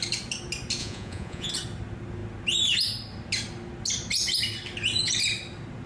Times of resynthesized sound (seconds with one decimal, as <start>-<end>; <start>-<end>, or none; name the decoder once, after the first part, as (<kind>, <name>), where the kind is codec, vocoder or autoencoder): 0.8-1.5 (vocoder, Vocos)